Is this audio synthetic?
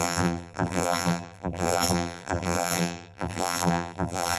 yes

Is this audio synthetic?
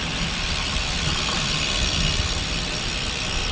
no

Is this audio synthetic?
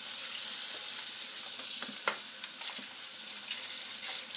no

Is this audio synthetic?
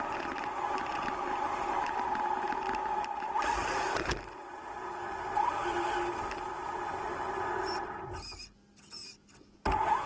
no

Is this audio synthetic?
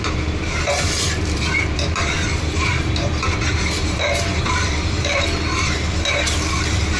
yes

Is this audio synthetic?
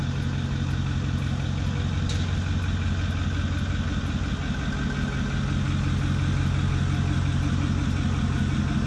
no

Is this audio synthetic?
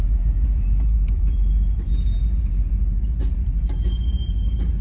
yes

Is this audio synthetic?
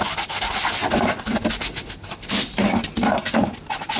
no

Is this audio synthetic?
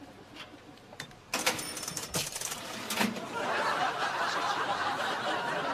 yes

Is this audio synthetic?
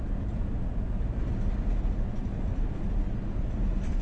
no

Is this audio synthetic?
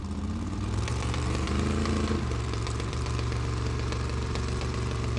yes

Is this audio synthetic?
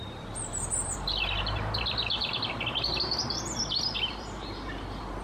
yes